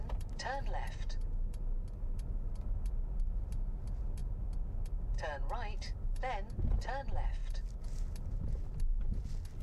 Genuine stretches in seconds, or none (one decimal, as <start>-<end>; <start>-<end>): 0.0-9.6